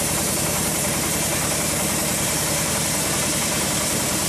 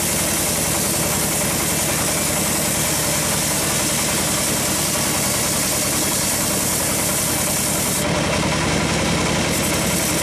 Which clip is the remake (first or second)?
first